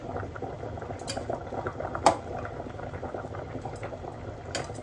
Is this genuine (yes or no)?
yes